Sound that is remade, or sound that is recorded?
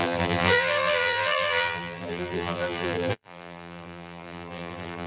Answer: remade